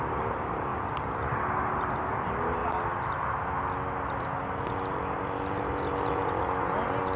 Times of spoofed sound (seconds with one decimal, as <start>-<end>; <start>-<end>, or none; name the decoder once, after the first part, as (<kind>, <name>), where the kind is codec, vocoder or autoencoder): 0.0-0.7 (vocoder, BigVGAN v2); 2.0-2.6